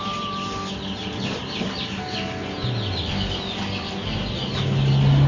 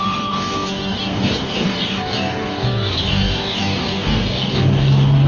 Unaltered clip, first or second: first